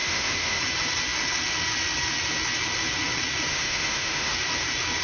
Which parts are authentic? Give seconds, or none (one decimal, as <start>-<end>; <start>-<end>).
0.6-3.5; 4.3-5.0